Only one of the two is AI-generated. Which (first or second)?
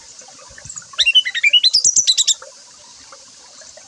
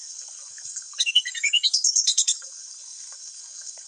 second